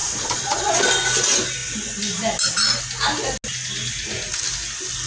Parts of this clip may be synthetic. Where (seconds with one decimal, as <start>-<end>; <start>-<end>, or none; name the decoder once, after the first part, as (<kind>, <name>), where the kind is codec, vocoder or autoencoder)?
0.0-0.7 (vocoder, Vocos)